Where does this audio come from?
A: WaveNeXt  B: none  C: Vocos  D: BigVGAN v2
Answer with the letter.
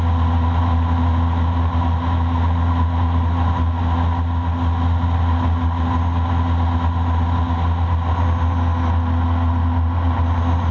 B